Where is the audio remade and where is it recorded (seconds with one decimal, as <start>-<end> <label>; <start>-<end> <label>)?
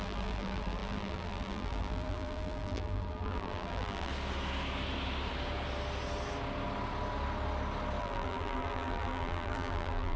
0.0-4.1 remade; 4.1-8.0 recorded; 8.0-10.2 remade